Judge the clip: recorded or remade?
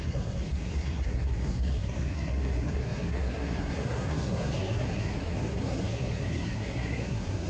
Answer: remade